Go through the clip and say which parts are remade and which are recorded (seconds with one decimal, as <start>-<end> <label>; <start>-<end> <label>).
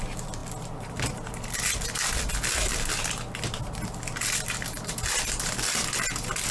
0.0-6.5 recorded